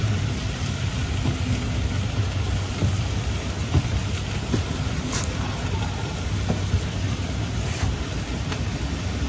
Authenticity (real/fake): real